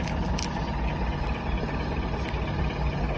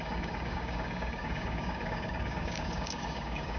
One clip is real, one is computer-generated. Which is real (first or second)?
first